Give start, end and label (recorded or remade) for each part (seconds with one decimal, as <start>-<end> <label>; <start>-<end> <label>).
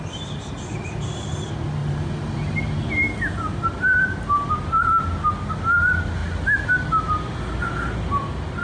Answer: 0.0-1.8 recorded; 1.8-4.5 remade; 4.5-8.6 recorded